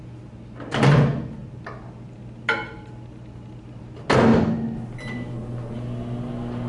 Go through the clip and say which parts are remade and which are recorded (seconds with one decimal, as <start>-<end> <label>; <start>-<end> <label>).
0.0-6.7 recorded